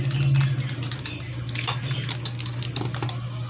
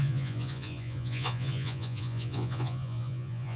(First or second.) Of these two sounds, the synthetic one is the second